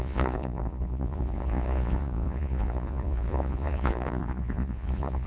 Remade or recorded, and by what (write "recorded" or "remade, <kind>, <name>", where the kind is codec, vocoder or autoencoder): remade, vocoder, Vocos